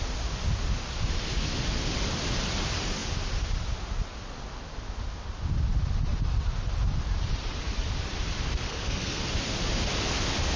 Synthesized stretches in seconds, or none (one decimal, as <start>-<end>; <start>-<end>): 8.7-9.2

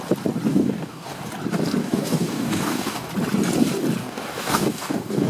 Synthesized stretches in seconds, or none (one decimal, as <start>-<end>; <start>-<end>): 0.5-1.3; 1.8-3.1; 4.0-5.3